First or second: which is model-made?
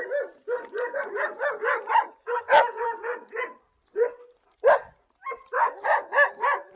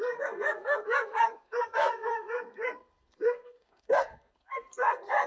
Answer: second